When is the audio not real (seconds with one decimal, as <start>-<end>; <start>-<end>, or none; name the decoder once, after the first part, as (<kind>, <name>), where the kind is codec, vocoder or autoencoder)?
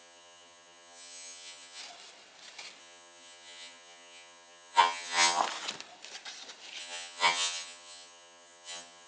0.0-1.8 (vocoder, HiFi-GAN); 2.8-5.4; 6.8-9.1